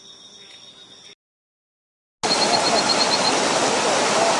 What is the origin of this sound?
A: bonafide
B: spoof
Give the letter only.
A